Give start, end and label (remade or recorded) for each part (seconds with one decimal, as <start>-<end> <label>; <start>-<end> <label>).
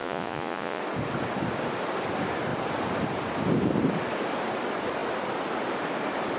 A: 0.0-0.8 remade; 0.8-6.4 recorded